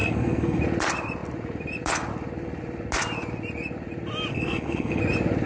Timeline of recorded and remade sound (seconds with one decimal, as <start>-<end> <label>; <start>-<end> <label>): 0.0-0.6 remade; 0.6-4.3 recorded; 4.3-5.0 remade; 5.0-5.5 recorded